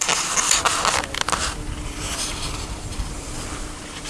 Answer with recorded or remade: recorded